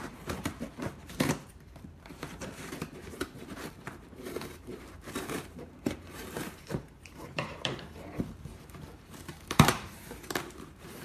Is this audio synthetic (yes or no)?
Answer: yes